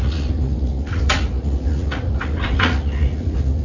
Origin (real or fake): fake